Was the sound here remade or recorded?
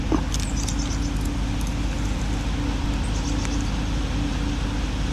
recorded